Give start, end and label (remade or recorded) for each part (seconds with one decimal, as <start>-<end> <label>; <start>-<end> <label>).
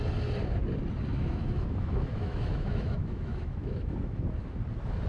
0.0-1.1 recorded; 1.1-4.2 remade; 4.2-5.1 recorded